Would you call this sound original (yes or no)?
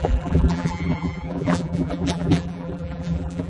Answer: no